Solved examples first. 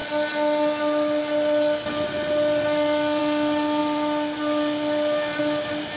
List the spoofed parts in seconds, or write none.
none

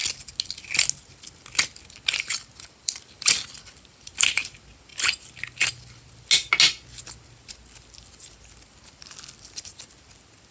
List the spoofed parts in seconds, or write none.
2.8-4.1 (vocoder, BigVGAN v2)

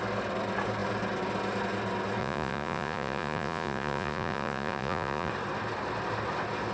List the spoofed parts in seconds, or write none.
2.2-5.3 (vocoder, Vocos)